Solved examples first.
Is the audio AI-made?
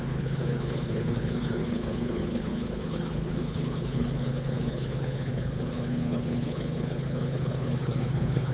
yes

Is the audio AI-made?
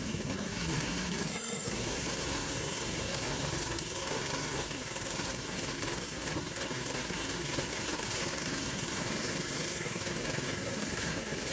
yes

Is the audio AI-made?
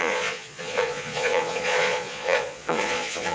yes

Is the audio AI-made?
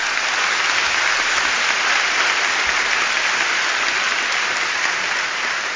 no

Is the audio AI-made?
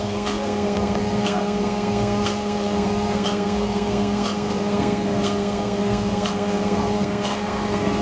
yes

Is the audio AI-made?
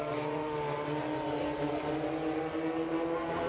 no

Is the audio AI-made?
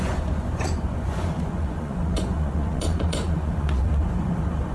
yes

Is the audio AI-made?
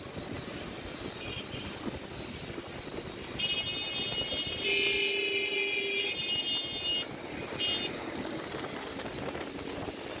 no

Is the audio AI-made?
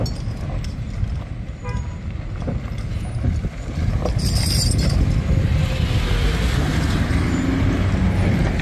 no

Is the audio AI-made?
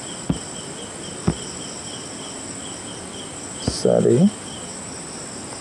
no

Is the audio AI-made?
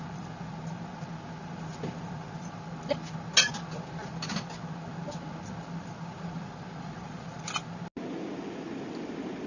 no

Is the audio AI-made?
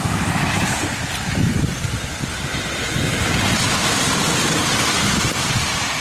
no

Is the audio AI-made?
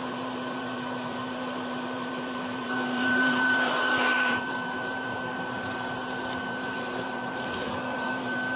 yes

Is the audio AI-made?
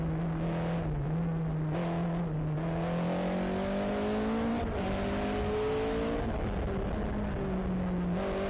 no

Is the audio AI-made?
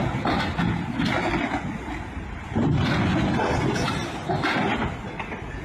no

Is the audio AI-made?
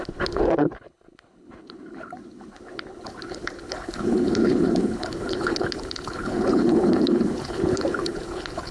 yes